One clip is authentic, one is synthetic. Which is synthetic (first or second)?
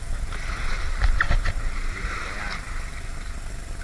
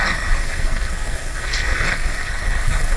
second